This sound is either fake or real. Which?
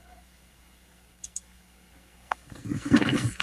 fake